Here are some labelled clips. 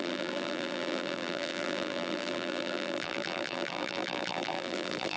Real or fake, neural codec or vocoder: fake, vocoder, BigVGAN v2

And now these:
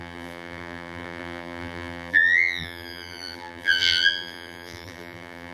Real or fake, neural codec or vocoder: fake, vocoder, BigVGAN v2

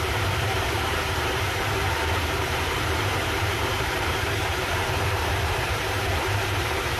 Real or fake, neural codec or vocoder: fake, vocoder, BigVGAN v2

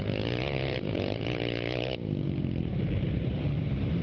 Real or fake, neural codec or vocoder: fake, vocoder, BigVGAN v2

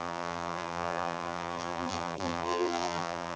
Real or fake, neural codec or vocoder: fake, vocoder, BigVGAN v2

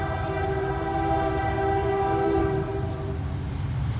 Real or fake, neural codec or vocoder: fake, vocoder, BigVGAN v2